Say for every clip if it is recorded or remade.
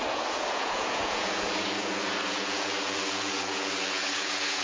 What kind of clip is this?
remade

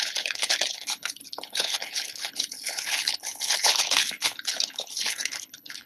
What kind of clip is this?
remade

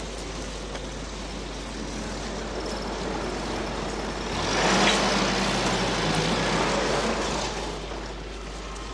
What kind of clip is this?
recorded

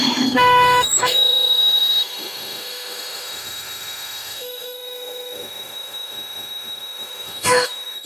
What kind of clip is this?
remade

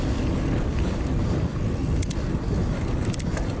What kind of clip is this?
recorded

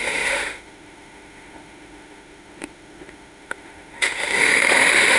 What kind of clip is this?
remade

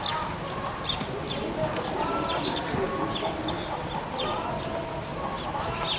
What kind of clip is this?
recorded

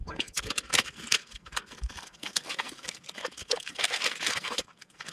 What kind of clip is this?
remade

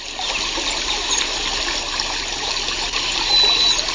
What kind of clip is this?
recorded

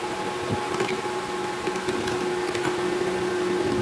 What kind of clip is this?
recorded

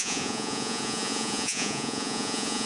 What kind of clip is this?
remade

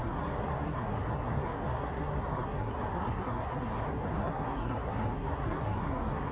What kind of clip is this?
remade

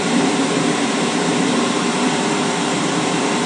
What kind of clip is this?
remade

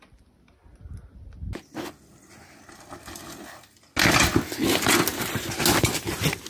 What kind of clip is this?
recorded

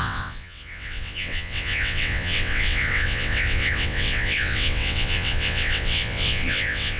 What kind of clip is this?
remade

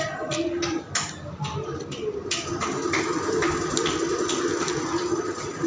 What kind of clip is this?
recorded